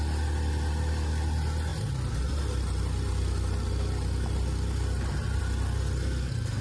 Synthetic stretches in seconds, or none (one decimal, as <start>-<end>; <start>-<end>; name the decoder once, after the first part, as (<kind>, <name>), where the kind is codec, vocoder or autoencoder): none